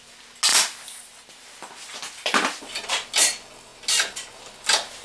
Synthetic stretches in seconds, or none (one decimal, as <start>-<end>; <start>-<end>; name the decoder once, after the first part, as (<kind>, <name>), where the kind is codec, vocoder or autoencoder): none